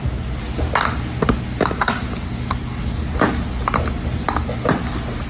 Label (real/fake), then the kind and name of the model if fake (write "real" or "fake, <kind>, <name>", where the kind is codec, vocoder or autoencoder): real